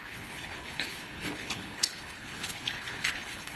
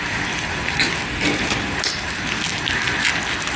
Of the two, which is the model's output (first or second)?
first